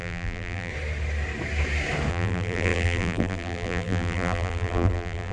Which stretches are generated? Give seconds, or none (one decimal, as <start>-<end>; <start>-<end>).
0.0-0.7; 2.1-5.3